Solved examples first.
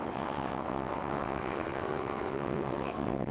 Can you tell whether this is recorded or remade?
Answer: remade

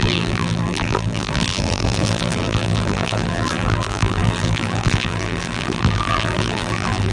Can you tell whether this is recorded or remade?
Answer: remade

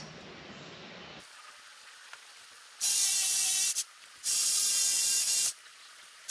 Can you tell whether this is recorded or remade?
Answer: recorded